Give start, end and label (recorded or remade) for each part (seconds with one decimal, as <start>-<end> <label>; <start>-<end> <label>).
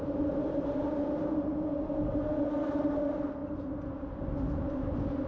0.0-5.3 recorded